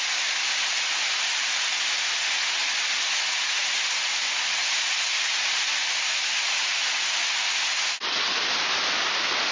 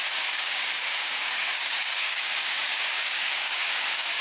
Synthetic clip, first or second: second